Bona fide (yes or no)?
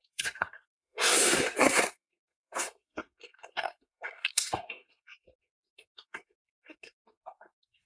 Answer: no